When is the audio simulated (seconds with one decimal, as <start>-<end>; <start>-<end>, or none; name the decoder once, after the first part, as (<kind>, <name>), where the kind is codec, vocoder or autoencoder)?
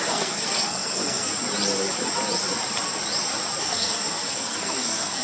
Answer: 0.0-1.3 (codec, SNAC); 3.6-5.2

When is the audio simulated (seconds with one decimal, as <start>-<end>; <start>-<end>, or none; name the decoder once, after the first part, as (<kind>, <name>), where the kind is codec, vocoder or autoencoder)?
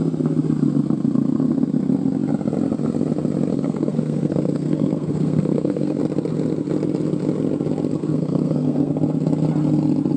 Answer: 3.5-6.0 (codec, SNAC); 8.0-8.9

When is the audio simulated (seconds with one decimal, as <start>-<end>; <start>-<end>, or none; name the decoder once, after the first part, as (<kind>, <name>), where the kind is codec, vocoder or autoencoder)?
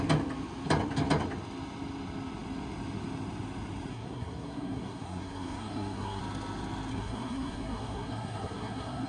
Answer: 3.9-6.2 (codec, SNAC); 6.9-9.1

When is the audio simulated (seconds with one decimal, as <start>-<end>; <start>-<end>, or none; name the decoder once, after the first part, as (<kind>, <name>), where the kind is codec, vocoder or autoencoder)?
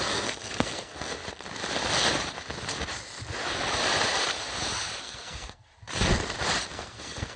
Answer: 0.0-1.2 (codec, SNAC); 5.0-5.7; 6.7-7.4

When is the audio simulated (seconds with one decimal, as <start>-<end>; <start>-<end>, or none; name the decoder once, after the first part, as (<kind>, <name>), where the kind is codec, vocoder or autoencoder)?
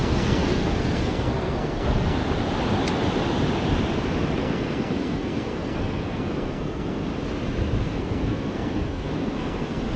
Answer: 0.0-2.2 (codec, SNAC); 4.4-7.1; 7.8-10.0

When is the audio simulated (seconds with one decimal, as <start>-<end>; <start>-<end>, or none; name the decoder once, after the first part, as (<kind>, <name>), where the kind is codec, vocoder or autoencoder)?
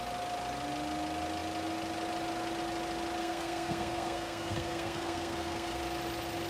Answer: 3.2-5.8 (codec, SNAC)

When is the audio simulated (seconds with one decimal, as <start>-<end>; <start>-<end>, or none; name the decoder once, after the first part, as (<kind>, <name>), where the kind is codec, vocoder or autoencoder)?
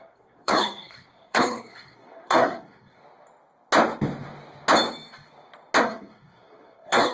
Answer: 0.0-3.0 (codec, SNAC); 5.8-7.1